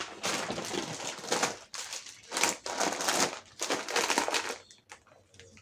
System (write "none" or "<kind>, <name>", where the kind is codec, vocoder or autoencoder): none